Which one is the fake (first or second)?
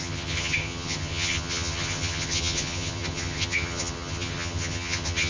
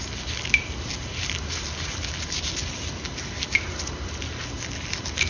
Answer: first